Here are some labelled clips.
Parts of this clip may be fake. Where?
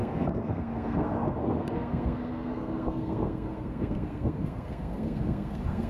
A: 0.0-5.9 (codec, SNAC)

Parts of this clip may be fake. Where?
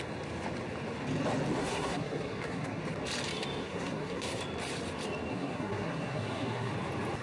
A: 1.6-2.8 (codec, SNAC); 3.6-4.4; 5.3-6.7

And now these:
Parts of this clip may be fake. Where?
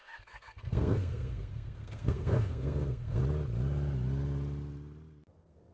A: 0.0-3.2 (codec, SNAC); 5.3-5.7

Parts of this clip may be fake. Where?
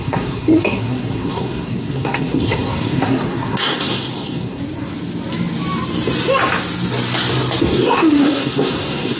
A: 0.0-4.6 (codec, SNAC); 7.6-9.2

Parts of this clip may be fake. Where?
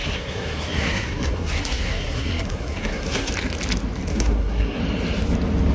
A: 0.0-3.3 (codec, SNAC); 4.1-4.8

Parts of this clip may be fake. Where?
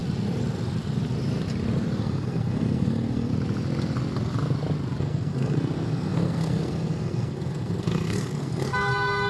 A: 2.0-3.3 (codec, SNAC); 5.0-9.3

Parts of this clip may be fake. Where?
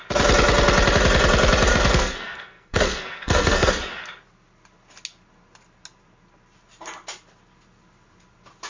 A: 1.7-3.7 (codec, SNAC)